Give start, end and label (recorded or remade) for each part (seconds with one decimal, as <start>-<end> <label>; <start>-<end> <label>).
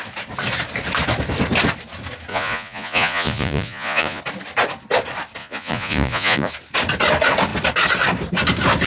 0.0-2.3 recorded; 2.3-4.2 remade; 4.2-5.4 recorded; 5.4-6.5 remade; 6.5-8.9 recorded